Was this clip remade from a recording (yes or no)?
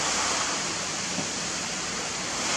no